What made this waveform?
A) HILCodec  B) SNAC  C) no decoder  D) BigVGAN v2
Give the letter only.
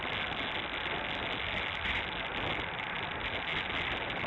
C